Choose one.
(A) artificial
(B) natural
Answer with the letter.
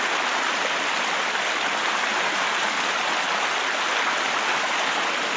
B